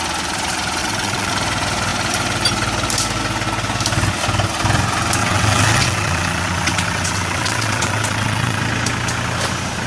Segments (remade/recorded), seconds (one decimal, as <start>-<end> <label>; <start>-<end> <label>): 0.0-0.8 recorded; 0.8-1.3 remade; 1.3-5.2 recorded; 5.2-8.6 remade; 8.6-9.9 recorded